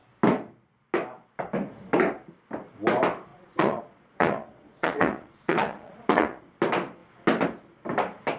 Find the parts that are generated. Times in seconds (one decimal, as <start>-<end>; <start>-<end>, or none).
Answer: 3.3-6.4